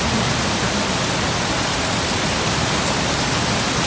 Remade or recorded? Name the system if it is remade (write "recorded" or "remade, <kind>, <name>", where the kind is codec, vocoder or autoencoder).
recorded